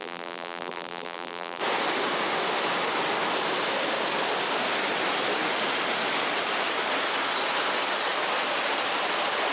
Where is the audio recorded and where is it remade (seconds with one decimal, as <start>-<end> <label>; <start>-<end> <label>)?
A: 0.0-1.6 remade; 1.6-9.5 recorded